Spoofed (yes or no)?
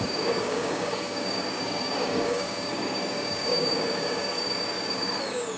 yes